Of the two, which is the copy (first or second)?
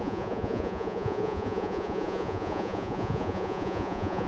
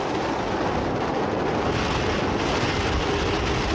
first